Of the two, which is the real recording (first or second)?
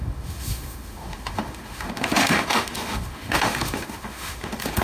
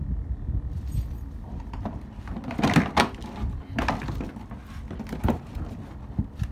second